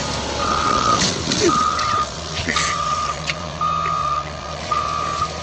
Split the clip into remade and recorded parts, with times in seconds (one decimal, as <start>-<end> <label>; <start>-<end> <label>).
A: 0.0-0.4 recorded; 0.4-3.6 remade; 3.6-4.0 recorded; 4.0-4.8 remade; 4.8-5.4 recorded